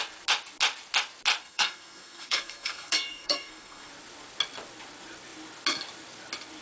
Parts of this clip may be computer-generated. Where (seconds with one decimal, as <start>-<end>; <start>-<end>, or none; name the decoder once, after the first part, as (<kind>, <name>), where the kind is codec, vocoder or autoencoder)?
1.4-3.9 (codec, SNAC)